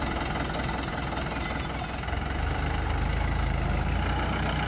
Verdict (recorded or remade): recorded